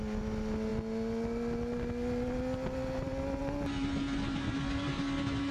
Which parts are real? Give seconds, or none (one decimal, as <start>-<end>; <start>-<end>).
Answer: 0.0-5.5